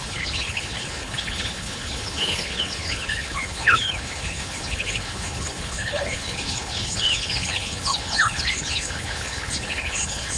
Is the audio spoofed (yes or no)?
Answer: yes